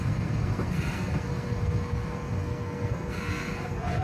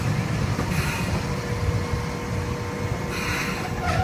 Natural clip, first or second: second